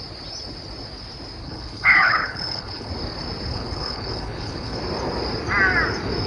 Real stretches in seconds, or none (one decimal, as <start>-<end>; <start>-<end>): 0.0-1.4; 2.9-3.5; 4.8-6.3